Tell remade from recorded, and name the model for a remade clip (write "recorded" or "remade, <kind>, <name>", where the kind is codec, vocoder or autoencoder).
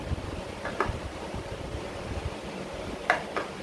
recorded